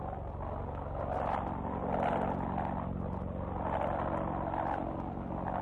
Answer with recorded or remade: recorded